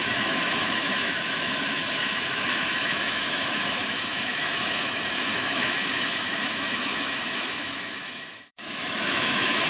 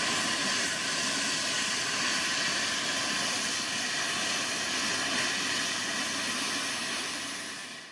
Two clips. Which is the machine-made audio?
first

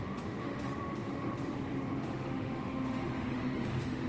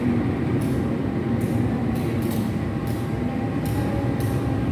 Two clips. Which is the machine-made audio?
first